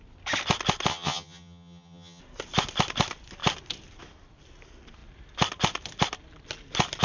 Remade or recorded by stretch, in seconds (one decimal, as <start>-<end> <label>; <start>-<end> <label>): 0.0-0.9 recorded; 0.9-2.2 remade; 2.2-7.0 recorded